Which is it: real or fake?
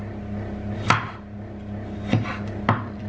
real